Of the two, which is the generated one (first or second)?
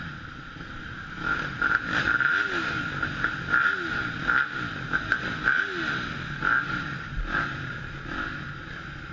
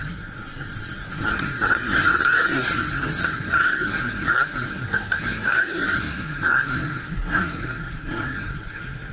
second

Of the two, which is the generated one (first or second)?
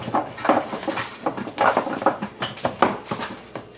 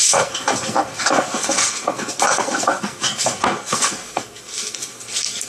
second